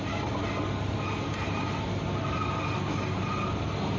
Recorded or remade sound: recorded